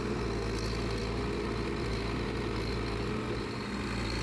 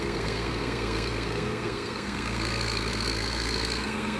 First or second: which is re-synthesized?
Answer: second